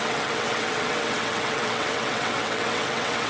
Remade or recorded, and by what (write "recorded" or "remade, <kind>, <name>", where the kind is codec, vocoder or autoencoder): remade, vocoder, WaveNeXt